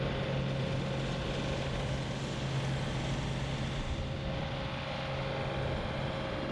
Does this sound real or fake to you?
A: real